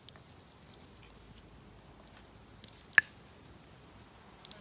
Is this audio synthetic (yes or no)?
no